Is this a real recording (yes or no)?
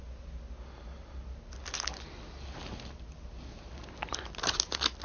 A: yes